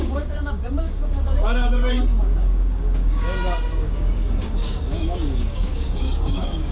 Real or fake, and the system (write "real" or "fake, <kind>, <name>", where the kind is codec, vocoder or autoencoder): fake, codec, DAC